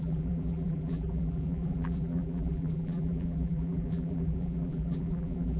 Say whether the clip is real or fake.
fake